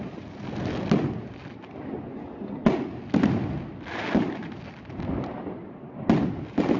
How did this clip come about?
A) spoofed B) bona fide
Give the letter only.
B